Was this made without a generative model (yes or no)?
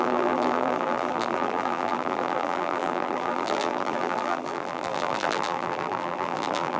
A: no